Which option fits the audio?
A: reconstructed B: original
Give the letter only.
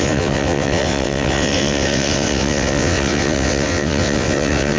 A